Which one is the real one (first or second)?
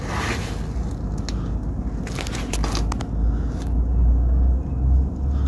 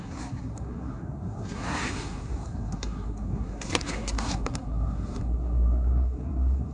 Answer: first